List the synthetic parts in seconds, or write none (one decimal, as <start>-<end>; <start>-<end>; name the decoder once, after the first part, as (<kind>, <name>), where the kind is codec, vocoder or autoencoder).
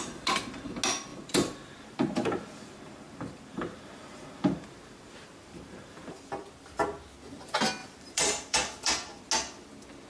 1.1-6.2 (vocoder, BigVGAN v2); 7.8-8.9